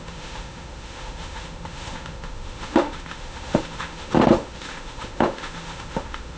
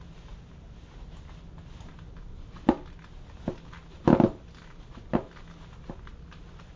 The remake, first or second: first